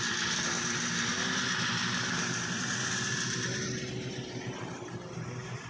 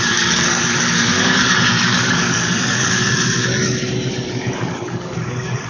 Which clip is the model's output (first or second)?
second